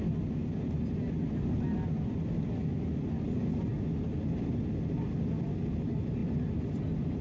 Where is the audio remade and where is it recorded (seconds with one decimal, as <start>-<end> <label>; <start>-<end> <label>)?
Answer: 0.0-7.2 recorded